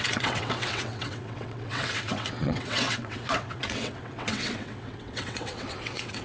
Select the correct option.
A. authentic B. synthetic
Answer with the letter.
B